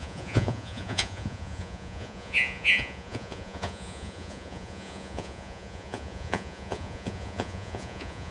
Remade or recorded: remade